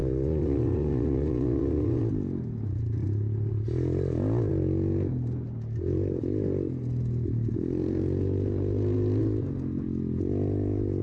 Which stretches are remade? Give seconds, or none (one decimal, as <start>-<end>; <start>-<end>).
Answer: 0.0-2.0